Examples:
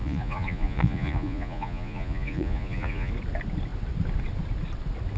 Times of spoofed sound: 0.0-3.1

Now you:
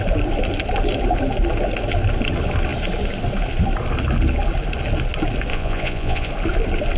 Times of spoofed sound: 5.5-6.3

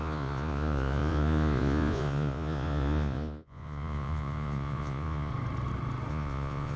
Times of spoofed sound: 0.0-5.3; 6.1-6.8

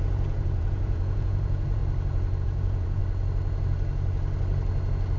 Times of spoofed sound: 0.0-1.8; 2.4-3.0